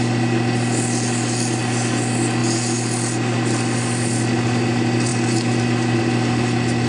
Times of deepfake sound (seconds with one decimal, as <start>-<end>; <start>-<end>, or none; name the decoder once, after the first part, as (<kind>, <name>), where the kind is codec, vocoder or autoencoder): none